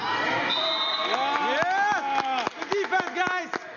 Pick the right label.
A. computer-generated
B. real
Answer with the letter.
B